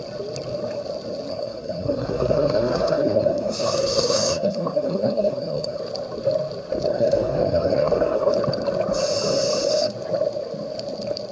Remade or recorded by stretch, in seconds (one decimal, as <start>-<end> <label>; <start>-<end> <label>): 0.0-1.3 recorded; 1.3-5.8 remade; 5.8-6.9 recorded; 6.9-8.3 remade; 8.3-11.3 recorded